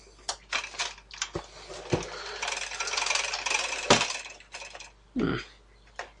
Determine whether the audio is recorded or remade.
recorded